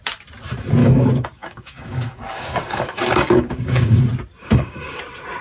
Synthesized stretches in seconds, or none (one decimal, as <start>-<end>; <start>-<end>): 0.8-4.0; 4.4-5.0